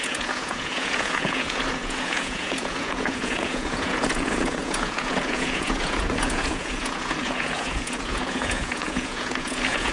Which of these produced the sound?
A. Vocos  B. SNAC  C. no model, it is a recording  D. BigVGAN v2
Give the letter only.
A